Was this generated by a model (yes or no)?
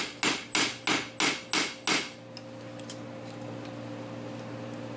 no